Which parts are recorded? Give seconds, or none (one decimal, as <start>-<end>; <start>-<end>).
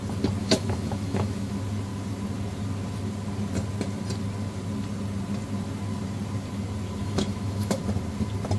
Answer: 0.0-0.4; 1.5-7.0; 7.8-8.6